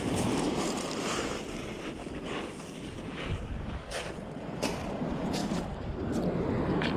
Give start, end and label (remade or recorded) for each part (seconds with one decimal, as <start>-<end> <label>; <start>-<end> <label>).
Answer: 0.0-2.0 recorded; 2.0-4.1 remade; 4.1-5.4 recorded; 5.4-6.2 remade; 6.2-7.0 recorded